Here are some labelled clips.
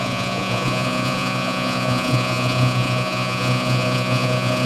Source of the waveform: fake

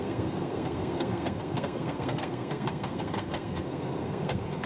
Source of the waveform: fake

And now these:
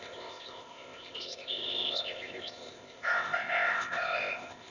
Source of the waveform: fake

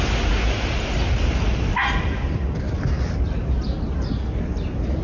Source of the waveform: real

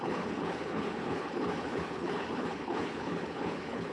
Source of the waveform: fake